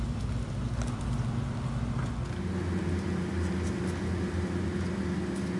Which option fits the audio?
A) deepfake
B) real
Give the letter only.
B